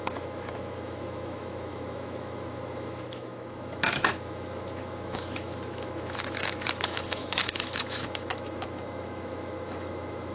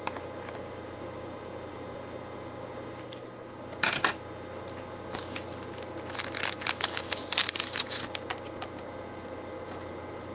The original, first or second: second